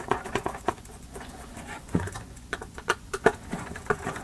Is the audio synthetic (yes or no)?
yes